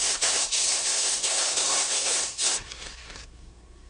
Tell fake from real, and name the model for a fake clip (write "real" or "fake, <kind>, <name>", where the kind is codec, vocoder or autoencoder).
fake, codec, SNAC